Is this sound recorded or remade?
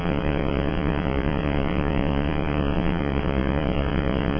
remade